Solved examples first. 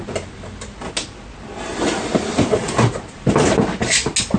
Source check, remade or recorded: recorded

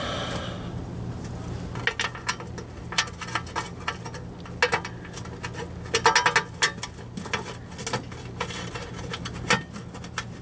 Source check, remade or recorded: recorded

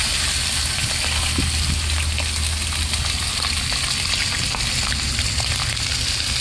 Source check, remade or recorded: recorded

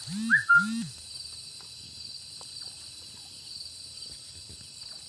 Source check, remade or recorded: recorded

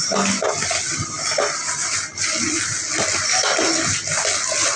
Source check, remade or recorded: recorded